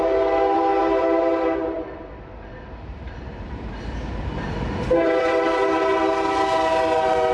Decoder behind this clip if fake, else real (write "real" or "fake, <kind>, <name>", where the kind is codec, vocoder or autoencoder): fake, vocoder, BigVGAN v2